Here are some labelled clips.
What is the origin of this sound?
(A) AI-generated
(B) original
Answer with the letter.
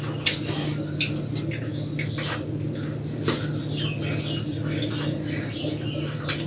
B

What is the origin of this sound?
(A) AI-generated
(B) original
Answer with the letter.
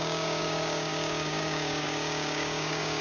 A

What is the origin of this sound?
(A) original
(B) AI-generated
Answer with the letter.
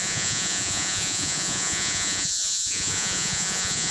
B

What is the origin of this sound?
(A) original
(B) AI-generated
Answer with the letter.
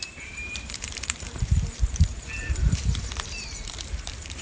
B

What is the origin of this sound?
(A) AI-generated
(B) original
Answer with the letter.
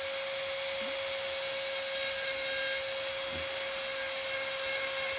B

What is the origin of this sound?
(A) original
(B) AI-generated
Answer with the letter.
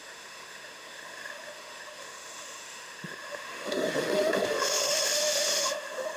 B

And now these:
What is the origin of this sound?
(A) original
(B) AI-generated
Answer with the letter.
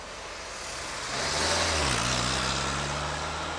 A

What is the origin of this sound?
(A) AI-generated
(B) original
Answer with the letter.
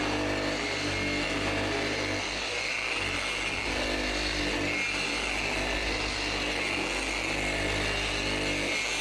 B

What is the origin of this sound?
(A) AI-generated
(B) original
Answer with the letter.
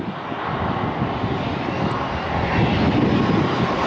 B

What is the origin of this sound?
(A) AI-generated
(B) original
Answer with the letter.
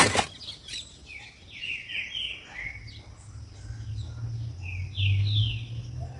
B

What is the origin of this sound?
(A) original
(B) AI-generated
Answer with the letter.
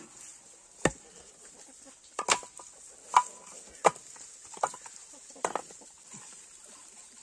A